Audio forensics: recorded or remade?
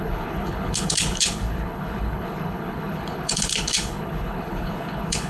remade